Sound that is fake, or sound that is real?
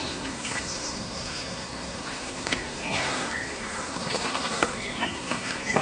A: fake